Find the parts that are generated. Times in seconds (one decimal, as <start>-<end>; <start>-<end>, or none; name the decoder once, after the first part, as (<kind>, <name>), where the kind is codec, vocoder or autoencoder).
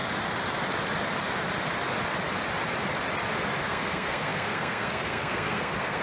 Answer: 3.6-6.0 (codec, SNAC)